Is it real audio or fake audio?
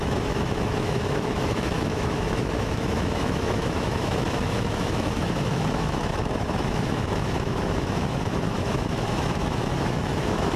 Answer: fake